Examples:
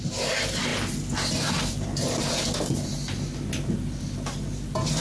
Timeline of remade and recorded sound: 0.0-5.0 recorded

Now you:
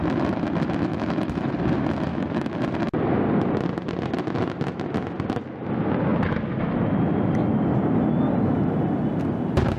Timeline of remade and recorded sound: 0.0-0.9 recorded; 0.9-1.5 remade; 1.5-2.1 recorded; 2.1-2.6 remade; 2.6-9.8 recorded

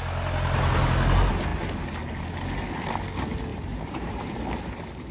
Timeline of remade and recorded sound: 0.0-3.5 recorded; 3.5-4.2 remade; 4.2-5.1 recorded

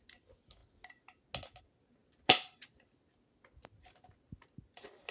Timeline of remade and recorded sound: 0.0-5.1 recorded

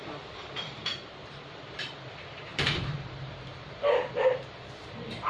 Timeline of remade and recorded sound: 0.0-5.3 remade

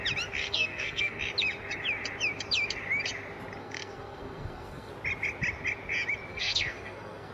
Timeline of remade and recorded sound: 0.0-0.4 recorded; 0.4-1.2 remade; 1.2-3.6 recorded; 3.6-4.9 remade; 4.9-6.3 recorded; 6.3-7.3 remade

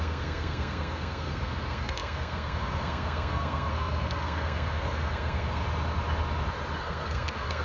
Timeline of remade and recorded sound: 0.0-5.6 remade; 5.6-6.8 recorded; 6.8-7.6 remade

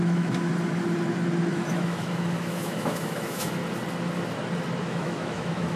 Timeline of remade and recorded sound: 0.0-0.5 remade; 0.5-1.5 recorded; 1.5-3.6 remade; 3.6-4.8 recorded; 4.8-5.8 remade